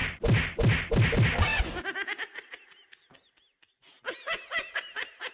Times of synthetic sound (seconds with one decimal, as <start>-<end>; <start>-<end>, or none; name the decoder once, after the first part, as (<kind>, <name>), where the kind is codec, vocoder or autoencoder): none